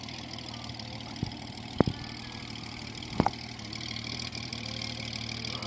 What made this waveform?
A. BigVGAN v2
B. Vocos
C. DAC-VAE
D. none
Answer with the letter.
D